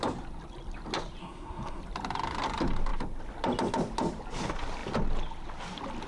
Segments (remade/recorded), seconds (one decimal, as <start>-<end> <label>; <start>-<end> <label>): 0.0-1.2 recorded; 1.2-1.8 remade; 1.8-6.1 recorded